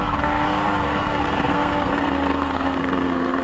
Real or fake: fake